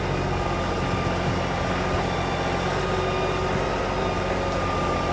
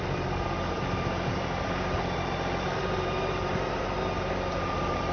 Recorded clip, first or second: first